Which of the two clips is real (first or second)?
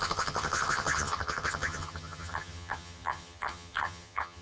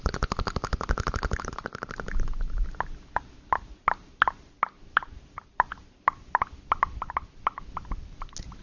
second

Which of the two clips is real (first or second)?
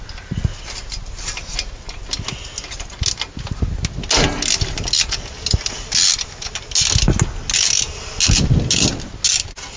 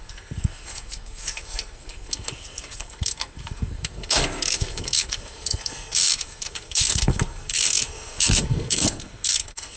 first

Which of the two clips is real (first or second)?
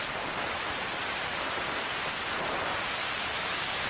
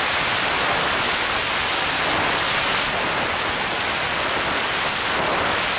second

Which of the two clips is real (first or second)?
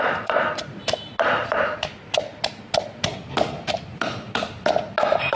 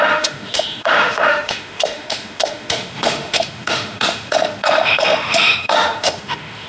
first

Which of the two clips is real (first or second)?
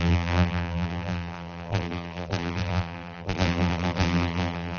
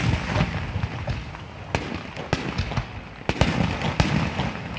second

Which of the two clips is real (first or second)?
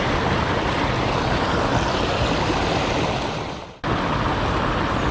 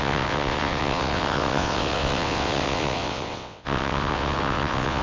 first